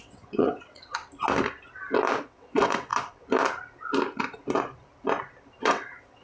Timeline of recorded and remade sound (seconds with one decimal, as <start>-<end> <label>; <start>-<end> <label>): 0.0-1.0 remade; 1.0-2.2 recorded; 2.2-2.9 remade; 2.9-5.6 recorded; 5.6-6.2 remade